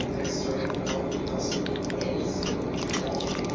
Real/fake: real